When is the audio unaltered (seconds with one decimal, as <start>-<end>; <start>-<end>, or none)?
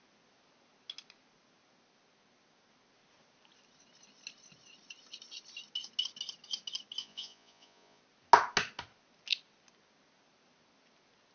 0.0-7.0; 8.0-11.3